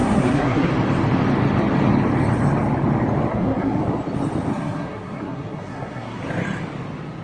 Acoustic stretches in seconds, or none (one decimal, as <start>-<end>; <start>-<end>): 0.7-3.3; 3.8-4.5; 6.2-7.2

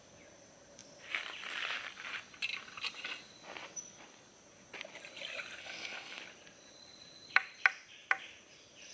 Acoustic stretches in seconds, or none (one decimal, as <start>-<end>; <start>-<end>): 0.0-5.6; 6.2-8.9